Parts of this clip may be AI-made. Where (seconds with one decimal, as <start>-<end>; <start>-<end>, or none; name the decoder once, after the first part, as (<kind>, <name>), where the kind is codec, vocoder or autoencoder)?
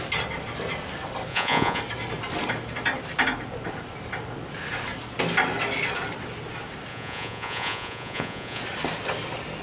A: 1.3-1.8 (vocoder, Vocos); 6.9-8.6